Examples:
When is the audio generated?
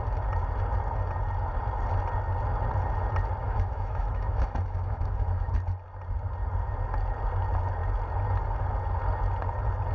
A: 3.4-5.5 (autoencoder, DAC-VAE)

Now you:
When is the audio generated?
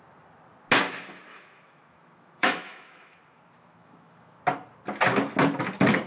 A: 1.3-4.4 (autoencoder, DAC-VAE)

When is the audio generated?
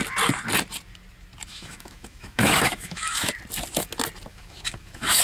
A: 1.5-3.3 (autoencoder, DAC-VAE); 4.3-5.2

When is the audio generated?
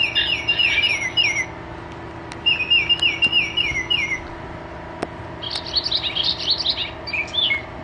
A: none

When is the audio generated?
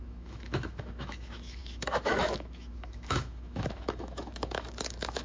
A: 0.0-5.2 (autoencoder, DAC-VAE)